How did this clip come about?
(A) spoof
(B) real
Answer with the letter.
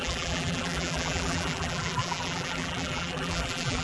A